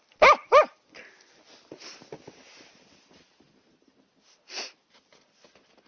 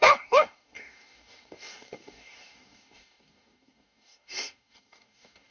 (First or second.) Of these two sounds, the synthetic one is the second